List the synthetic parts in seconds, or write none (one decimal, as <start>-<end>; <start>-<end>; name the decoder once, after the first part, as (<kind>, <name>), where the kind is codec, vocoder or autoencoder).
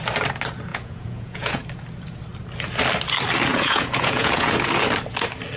0.7-1.6 (vocoder, Vocos); 3.5-4.7